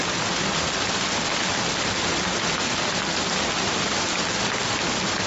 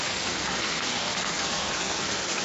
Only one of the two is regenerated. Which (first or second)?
second